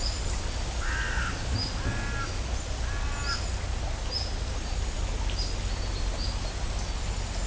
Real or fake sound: real